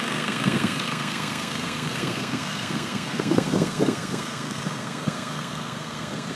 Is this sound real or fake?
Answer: fake